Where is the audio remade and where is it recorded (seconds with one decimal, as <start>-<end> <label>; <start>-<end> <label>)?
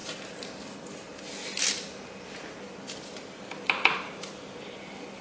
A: 0.0-5.2 recorded